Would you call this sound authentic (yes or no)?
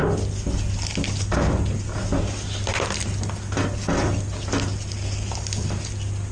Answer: yes